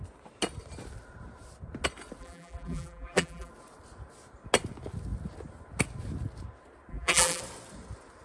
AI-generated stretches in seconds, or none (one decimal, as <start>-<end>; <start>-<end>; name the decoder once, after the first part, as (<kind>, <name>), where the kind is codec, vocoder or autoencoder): 2.2-3.5 (vocoder, BigVGAN v2); 6.9-7.4